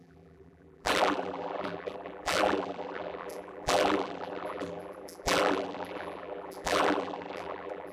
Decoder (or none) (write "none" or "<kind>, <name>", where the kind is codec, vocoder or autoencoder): vocoder, BigVGAN v2